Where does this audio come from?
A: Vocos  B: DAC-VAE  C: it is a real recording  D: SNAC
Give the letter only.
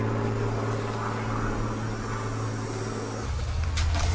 C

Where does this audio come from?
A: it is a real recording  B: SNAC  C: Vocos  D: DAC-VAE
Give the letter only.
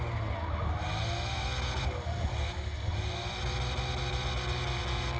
A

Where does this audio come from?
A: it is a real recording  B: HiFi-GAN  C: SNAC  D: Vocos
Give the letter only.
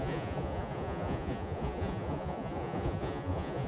D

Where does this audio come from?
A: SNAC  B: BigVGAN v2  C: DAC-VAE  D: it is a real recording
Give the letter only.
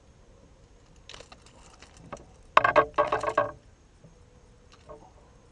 D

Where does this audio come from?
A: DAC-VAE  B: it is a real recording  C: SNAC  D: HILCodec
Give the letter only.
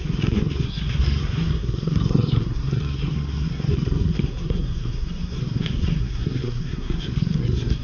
C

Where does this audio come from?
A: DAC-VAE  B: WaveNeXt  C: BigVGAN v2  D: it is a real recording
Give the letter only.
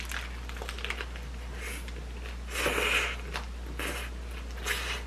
D